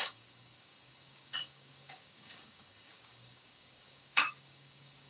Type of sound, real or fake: fake